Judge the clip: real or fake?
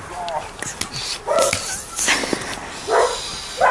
real